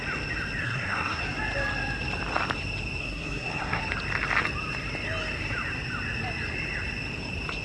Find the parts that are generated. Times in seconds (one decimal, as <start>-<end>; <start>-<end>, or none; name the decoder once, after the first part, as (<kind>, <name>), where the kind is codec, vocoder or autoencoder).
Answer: 0.6-1.2 (codec, SNAC); 3.0-3.8

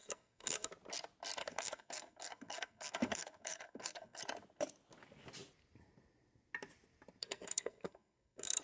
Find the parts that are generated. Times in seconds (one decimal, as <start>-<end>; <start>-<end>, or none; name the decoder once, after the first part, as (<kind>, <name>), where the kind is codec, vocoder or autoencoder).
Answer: 0.0-0.7 (codec, SNAC); 1.4-4.2; 7.2-8.6

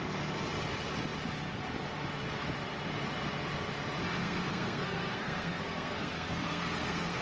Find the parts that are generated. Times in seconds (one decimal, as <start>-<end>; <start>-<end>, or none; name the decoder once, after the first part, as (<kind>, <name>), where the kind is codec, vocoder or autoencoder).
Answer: 4.2-7.2 (codec, SNAC)